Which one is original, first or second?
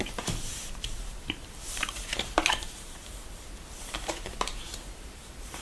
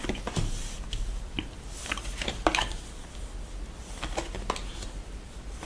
second